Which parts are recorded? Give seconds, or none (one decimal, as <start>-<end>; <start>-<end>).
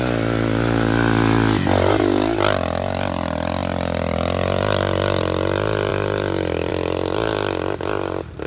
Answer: 0.0-3.6; 5.2-5.9; 6.7-8.5